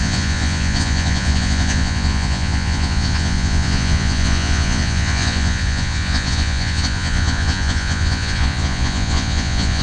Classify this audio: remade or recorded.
remade